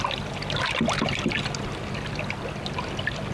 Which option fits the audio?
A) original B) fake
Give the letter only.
A